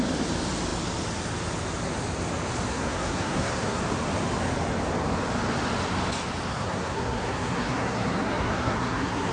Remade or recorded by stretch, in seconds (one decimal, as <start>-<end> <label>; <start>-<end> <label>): 0.0-2.7 recorded; 2.7-3.8 remade; 3.8-6.5 recorded; 6.5-9.3 remade